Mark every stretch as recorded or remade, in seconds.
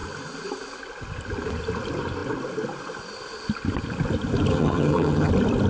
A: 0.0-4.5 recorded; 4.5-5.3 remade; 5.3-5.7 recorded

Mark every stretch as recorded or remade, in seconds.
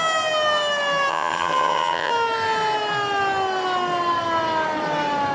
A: 0.0-1.1 recorded; 1.1-2.1 remade; 2.1-5.3 recorded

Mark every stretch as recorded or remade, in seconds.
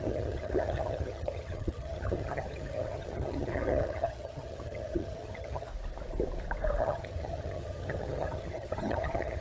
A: 0.0-5.7 remade; 5.7-6.8 recorded; 6.8-9.4 remade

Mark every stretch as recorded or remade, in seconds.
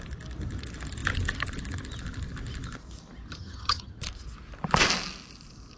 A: 0.0-3.3 recorded; 3.3-4.0 remade; 4.0-5.8 recorded